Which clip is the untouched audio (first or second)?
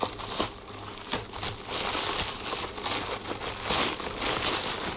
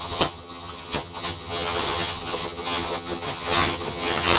first